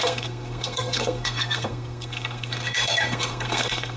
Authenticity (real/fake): fake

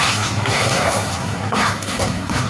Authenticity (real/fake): fake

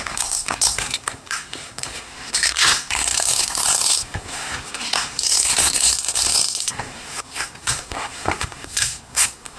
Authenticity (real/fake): fake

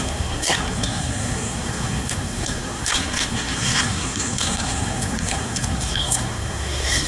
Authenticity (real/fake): fake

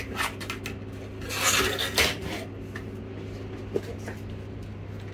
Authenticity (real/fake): real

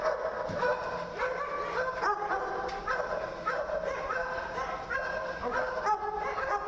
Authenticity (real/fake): real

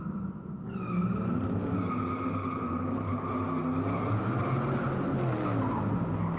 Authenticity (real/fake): real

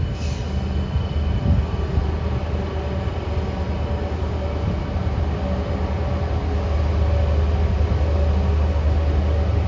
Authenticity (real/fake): real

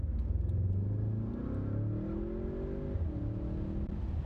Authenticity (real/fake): real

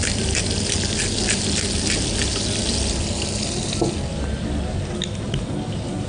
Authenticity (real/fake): real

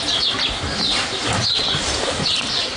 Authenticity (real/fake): real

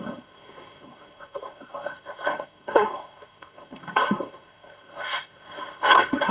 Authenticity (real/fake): fake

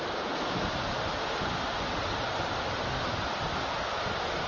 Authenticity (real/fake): real